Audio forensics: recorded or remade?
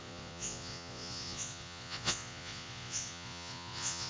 remade